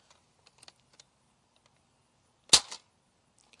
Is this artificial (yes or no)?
no